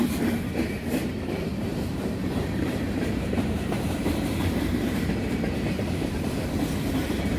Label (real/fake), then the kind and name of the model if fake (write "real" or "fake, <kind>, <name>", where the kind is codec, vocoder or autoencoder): fake, vocoder, BigVGAN v2